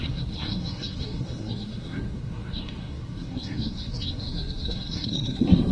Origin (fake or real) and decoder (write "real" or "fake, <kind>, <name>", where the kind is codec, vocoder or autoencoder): fake, codec, SNAC